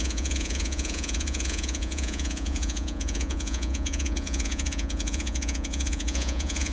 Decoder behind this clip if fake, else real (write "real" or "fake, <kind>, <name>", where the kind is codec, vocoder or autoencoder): fake, vocoder, Vocos